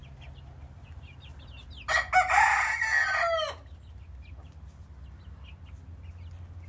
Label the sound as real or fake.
real